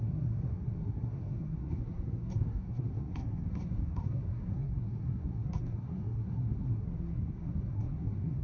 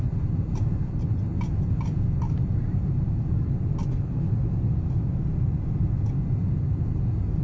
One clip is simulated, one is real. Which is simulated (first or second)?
first